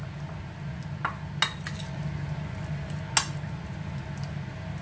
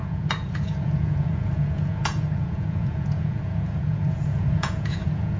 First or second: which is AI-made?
second